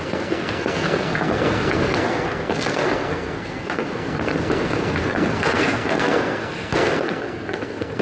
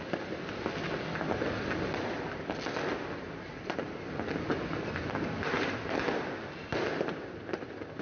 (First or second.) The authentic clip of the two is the second